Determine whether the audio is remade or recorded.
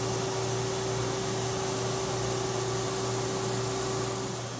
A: recorded